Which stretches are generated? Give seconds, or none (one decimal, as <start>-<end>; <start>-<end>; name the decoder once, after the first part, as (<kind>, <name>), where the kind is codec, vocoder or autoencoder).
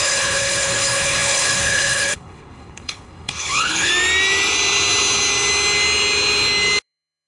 0.0-3.9 (codec, HILCodec); 6.8-7.3